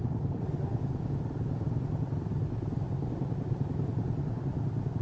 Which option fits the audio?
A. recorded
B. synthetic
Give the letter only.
A